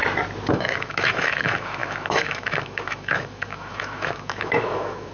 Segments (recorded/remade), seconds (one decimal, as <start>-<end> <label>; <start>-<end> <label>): 0.0-0.5 recorded; 0.5-5.1 remade